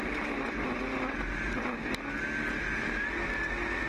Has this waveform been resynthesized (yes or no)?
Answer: no